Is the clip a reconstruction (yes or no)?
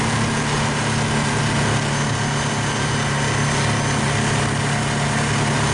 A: no